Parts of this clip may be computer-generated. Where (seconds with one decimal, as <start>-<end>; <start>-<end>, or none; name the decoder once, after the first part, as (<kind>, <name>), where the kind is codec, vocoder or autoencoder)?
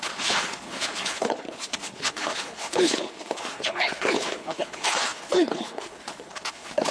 0.0-6.9 (codec, HILCodec)